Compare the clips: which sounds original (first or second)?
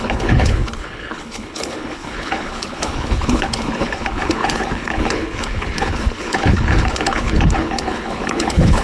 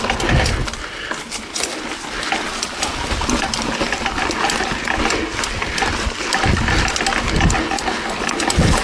second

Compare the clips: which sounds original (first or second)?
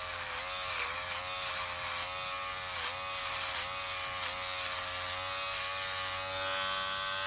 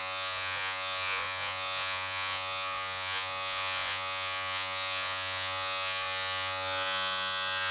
first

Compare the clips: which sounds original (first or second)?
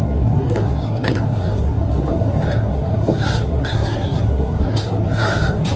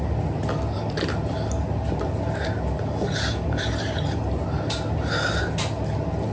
second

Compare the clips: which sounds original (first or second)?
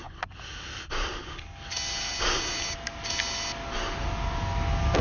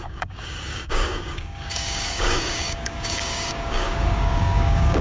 first